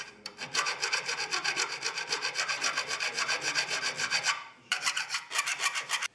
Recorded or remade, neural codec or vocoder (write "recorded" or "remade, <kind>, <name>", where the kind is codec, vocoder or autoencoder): remade, vocoder, BigVGAN v2